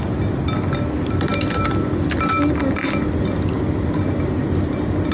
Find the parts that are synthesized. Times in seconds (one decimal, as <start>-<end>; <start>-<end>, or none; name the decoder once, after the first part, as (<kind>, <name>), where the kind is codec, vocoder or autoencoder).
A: none